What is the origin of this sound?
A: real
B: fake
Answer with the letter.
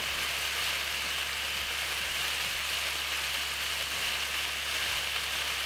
A